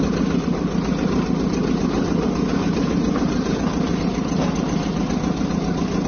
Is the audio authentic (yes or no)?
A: yes